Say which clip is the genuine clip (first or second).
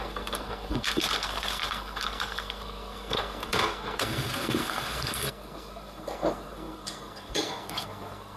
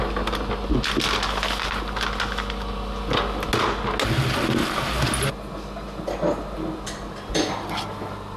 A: second